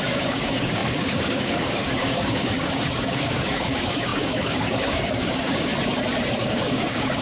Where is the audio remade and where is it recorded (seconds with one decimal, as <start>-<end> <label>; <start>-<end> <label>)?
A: 0.0-5.7 remade; 5.7-6.3 recorded; 6.3-7.2 remade